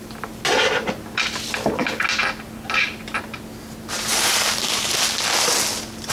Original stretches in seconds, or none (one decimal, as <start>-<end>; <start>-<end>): 0.0-4.1; 4.9-6.1